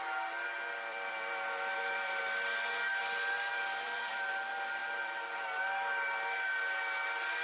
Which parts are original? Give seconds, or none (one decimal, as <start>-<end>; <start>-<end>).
0.0-0.9; 2.2-3.5; 4.3-4.8; 5.4-7.4